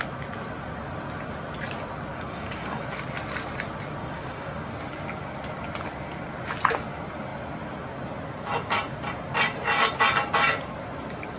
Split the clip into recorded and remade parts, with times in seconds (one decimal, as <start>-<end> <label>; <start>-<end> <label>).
0.0-2.1 recorded; 2.1-2.8 remade; 2.8-4.0 recorded; 4.0-4.7 remade; 4.7-11.4 recorded

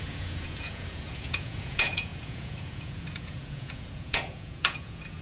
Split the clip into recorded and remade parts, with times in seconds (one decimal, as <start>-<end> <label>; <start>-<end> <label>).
0.0-5.2 remade